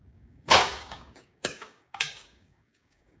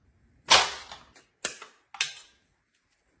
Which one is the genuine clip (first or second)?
second